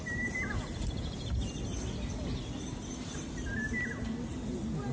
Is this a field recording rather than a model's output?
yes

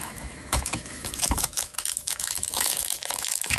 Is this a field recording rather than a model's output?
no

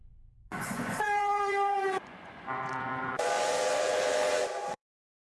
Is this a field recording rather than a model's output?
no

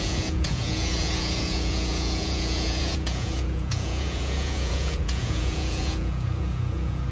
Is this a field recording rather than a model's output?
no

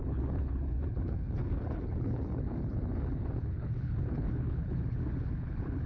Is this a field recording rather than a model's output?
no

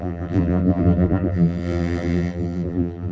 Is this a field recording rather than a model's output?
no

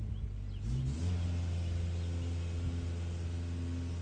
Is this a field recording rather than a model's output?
yes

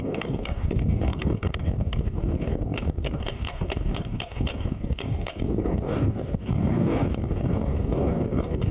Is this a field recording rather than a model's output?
no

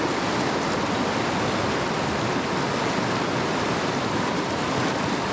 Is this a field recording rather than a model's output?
yes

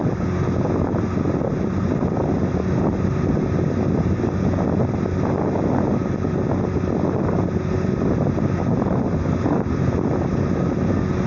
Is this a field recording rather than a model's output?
yes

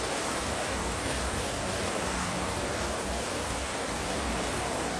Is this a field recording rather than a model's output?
no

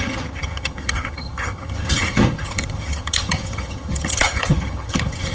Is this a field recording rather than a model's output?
no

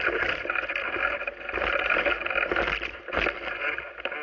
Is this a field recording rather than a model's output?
yes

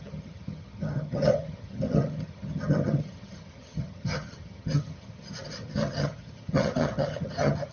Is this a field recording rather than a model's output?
no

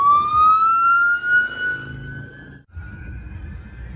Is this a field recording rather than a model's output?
yes